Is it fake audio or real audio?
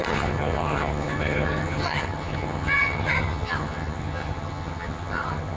fake